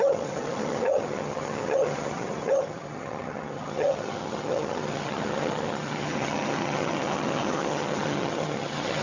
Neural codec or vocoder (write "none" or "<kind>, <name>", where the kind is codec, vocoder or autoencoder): vocoder, HiFi-GAN